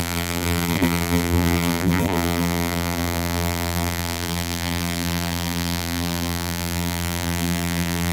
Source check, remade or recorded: remade